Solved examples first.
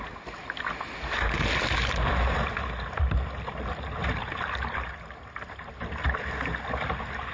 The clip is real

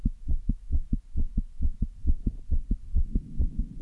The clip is real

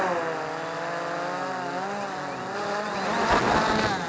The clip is real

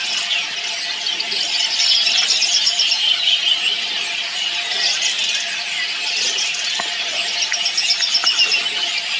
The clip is real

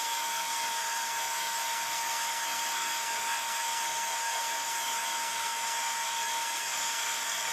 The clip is fake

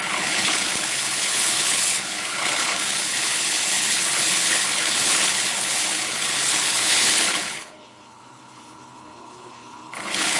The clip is fake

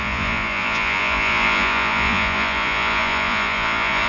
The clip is fake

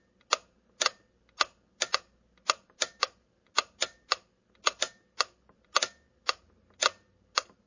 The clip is real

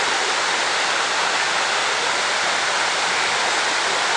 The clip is real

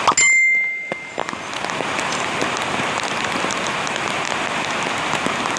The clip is real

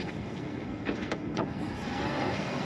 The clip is fake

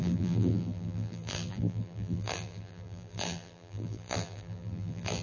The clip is fake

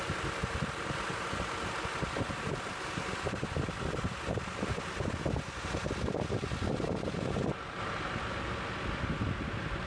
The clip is real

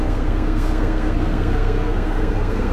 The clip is fake